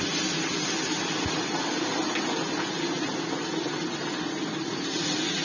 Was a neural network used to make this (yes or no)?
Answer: no